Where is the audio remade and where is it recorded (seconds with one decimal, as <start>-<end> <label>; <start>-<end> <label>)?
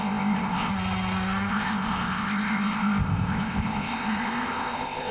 0.0-0.7 remade; 0.7-1.5 recorded; 1.5-5.1 remade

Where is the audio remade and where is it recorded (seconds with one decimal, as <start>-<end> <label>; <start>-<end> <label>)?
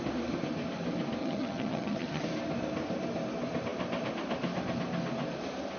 0.0-1.2 recorded; 1.2-2.2 remade; 2.2-5.8 recorded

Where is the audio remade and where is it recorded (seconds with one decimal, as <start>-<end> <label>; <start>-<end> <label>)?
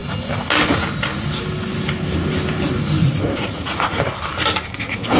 0.0-3.0 recorded; 3.0-4.0 remade; 4.0-5.2 recorded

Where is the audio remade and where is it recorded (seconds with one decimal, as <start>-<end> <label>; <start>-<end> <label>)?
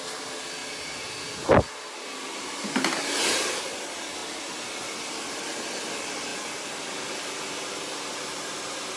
0.0-9.0 recorded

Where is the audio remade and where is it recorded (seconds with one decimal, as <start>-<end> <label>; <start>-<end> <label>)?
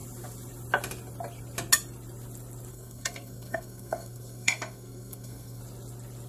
0.0-2.7 recorded; 2.7-5.6 remade; 5.6-6.3 recorded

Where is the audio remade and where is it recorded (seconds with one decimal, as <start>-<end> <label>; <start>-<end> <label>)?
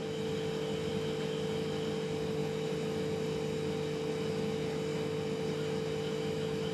0.0-6.7 recorded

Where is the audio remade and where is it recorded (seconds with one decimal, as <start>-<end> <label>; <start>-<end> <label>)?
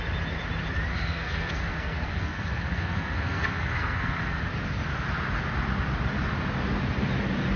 0.0-0.9 recorded; 0.9-4.4 remade; 4.4-7.6 recorded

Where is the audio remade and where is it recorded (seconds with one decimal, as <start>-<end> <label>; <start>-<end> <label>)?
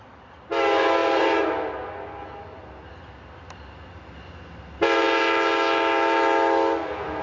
0.0-7.2 recorded